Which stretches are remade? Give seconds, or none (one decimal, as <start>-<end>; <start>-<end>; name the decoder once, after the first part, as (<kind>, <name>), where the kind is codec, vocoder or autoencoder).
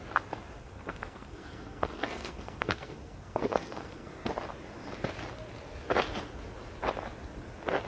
0.6-4.3 (codec, SNAC)